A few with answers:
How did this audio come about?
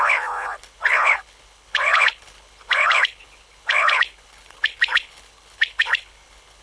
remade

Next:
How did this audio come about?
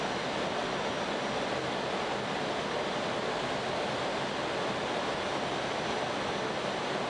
recorded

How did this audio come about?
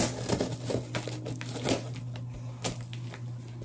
recorded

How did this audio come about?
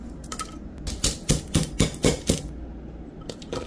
recorded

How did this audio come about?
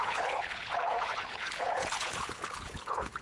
remade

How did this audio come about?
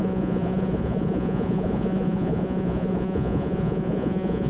remade